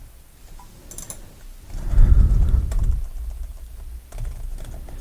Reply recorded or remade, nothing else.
recorded